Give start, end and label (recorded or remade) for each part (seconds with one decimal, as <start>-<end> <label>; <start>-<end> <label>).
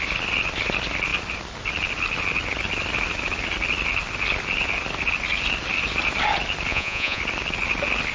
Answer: 0.0-6.7 recorded; 6.7-7.2 remade; 7.2-8.1 recorded